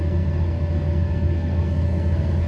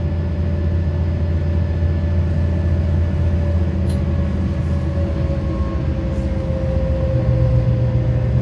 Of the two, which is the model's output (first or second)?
first